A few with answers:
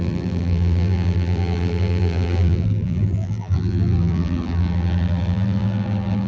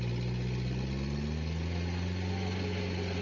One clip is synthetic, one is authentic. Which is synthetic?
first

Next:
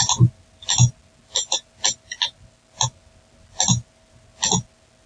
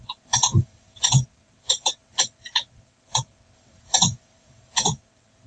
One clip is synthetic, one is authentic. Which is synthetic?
second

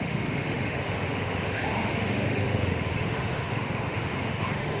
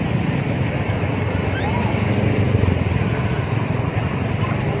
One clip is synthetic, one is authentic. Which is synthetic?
first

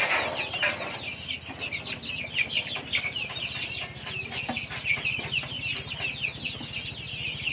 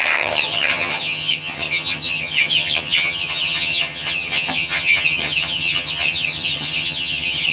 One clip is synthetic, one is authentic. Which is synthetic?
second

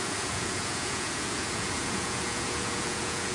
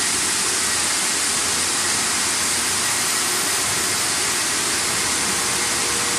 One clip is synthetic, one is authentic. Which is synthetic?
first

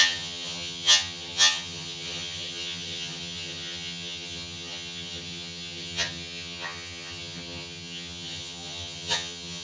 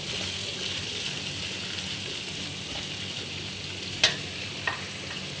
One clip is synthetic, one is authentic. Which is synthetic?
first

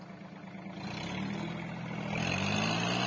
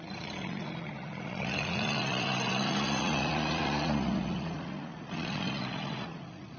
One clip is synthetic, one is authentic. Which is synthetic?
second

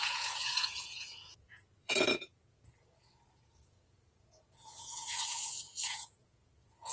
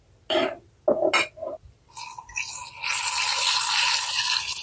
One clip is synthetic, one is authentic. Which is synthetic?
first